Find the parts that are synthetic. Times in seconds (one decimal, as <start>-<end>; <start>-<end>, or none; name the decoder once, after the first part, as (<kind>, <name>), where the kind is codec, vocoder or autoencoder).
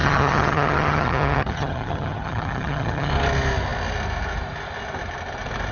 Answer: 0.0-3.1 (vocoder, HiFi-GAN)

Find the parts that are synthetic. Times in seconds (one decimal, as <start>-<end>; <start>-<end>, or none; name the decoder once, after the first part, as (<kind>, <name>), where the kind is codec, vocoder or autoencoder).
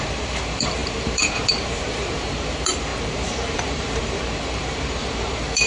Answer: 0.0-5.7 (vocoder, BigVGAN v2)